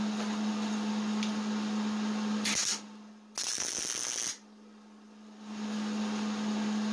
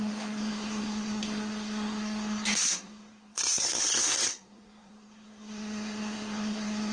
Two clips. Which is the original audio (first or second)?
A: first